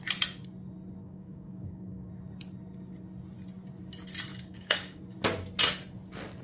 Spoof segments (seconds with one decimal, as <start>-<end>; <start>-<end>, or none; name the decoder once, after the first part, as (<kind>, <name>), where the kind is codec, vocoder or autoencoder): 1.0-2.1 (codec, DAC); 4.3-5.0